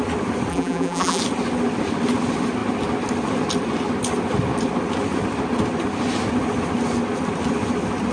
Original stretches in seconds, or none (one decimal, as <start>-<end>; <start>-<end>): 0.0-0.5; 1.2-8.1